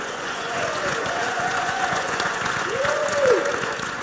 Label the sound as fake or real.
fake